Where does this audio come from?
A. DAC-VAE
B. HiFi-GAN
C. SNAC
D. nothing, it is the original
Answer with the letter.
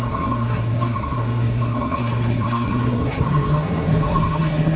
C